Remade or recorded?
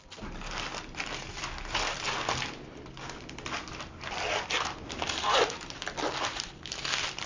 recorded